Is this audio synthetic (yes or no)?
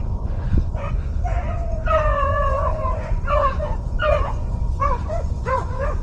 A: yes